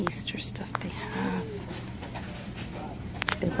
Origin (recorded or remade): recorded